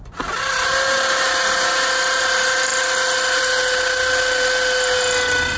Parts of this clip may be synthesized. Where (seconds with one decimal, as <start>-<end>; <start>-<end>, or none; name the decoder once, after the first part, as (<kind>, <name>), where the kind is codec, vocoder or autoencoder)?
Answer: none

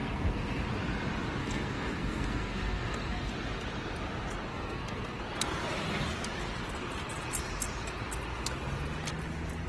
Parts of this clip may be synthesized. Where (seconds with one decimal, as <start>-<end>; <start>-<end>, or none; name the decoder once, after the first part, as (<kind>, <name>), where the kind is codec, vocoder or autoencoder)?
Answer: 0.0-0.6 (codec, SNAC); 1.4-3.3; 4.5-5.2

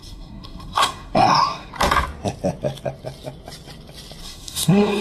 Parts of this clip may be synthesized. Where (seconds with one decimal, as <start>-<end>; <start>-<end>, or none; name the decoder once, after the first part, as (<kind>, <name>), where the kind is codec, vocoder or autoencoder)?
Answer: 0.0-1.7 (codec, SNAC); 4.2-5.0